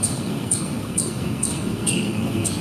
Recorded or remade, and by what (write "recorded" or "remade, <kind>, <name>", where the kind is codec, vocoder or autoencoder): remade, codec, SNAC